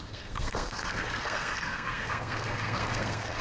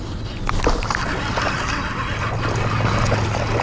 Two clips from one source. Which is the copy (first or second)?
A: first